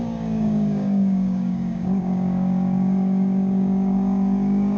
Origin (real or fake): fake